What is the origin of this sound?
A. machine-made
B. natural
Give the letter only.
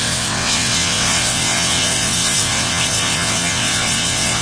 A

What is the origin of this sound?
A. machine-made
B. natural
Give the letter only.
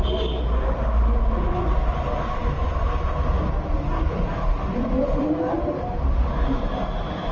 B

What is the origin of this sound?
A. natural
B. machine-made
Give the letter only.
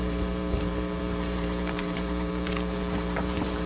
B